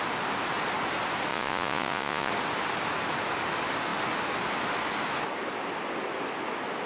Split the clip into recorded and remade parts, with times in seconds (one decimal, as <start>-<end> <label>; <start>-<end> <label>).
0.0-1.3 recorded; 1.3-2.3 remade; 2.3-6.9 recorded